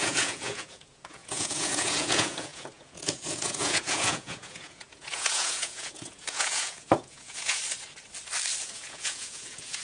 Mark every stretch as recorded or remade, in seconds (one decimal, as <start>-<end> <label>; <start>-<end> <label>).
0.0-7.6 remade; 7.6-8.6 recorded; 8.6-9.8 remade